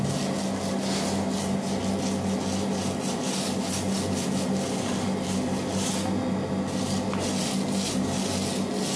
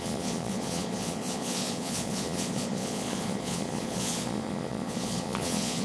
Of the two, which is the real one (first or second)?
first